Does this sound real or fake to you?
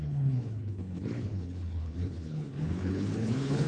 fake